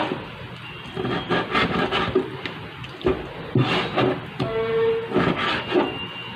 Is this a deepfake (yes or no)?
no